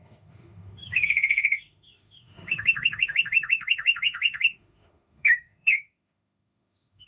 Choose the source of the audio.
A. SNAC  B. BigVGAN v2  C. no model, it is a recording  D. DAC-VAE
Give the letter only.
D